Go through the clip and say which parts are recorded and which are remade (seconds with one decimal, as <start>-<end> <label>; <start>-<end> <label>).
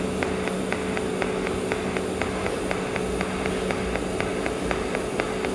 0.0-5.5 recorded